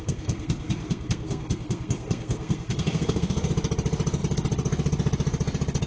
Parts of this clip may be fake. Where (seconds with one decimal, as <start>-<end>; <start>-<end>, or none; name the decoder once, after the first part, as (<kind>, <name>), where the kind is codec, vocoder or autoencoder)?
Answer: 0.0-3.5 (codec, SNAC)